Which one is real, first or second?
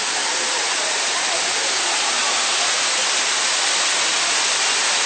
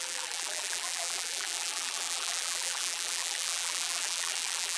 first